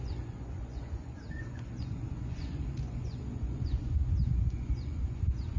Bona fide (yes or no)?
no